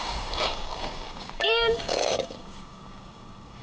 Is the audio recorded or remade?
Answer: remade